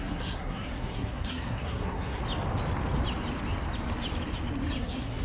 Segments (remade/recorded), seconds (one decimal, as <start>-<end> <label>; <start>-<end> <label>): 0.0-2.2 remade; 2.2-4.8 recorded; 4.8-5.2 remade